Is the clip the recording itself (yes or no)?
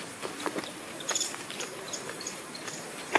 no